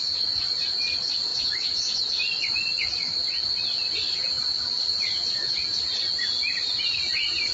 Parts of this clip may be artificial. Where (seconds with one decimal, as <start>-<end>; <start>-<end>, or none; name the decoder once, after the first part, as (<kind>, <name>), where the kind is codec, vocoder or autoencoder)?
none